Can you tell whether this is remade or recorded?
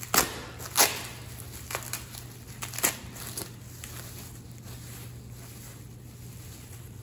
recorded